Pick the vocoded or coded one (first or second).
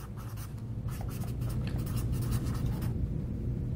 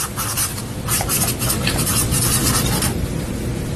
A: second